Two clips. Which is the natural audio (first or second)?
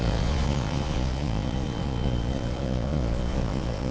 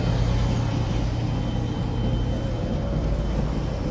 second